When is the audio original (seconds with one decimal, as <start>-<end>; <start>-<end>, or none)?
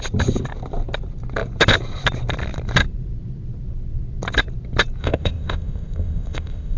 0.0-5.0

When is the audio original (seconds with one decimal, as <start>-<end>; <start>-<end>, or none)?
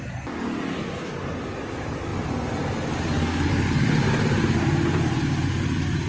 0.0-6.1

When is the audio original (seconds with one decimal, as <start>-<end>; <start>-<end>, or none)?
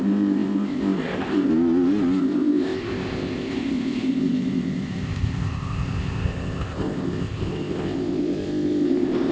1.5-2.2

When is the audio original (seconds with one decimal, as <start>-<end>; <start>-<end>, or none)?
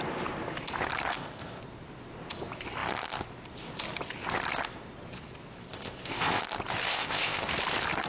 0.0-1.1; 1.6-5.7; 6.4-6.9; 7.5-8.1